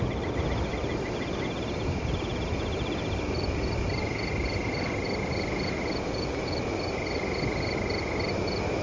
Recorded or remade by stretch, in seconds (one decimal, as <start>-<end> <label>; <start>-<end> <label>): 0.0-8.8 recorded